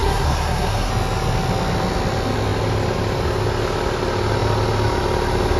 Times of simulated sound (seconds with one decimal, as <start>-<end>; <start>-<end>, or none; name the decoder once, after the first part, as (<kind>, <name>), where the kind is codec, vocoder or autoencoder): 0.0-0.9 (codec, SNAC)